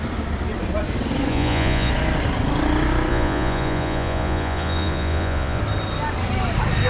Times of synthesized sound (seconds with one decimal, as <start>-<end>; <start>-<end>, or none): 1.3-1.9; 3.1-5.6